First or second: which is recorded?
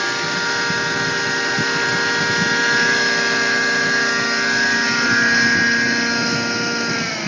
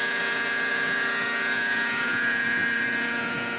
first